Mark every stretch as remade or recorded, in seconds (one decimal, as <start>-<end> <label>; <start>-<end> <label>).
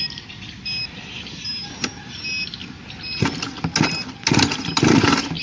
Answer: 0.0-5.4 recorded